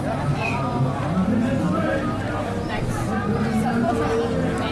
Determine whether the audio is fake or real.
real